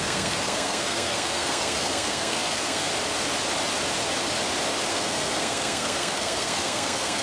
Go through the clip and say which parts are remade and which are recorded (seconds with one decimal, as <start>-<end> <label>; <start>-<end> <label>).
0.0-2.9 remade; 2.9-4.9 recorded; 4.9-7.2 remade